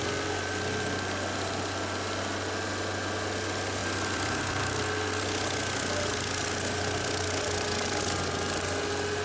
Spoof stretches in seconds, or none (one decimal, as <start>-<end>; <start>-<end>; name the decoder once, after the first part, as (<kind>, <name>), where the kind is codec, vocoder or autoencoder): 3.8-4.6 (vocoder, BigVGAN v2)